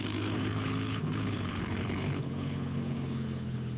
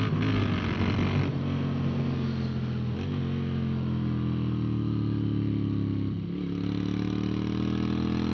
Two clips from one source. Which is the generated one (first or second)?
first